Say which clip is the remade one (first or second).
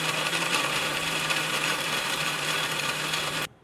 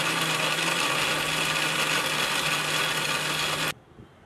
first